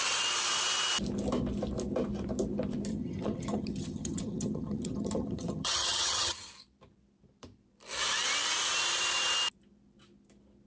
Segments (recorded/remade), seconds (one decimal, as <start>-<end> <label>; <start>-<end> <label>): 0.0-2.9 recorded; 2.9-6.5 remade; 6.5-10.7 recorded